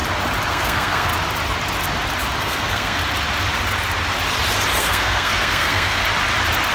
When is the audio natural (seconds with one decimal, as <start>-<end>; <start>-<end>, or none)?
0.0-0.5; 1.1-2.4; 3.0-4.8; 6.0-6.7